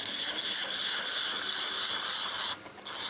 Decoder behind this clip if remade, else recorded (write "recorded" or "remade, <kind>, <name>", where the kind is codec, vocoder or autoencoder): recorded